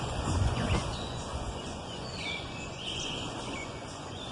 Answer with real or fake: fake